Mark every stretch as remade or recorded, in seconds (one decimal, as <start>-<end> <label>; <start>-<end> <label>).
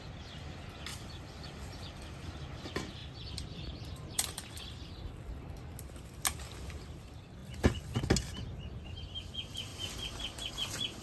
0.0-0.9 recorded; 0.9-1.5 remade; 1.5-3.0 recorded; 3.0-4.9 remade; 4.9-9.7 recorded; 9.7-10.5 remade; 10.5-11.0 recorded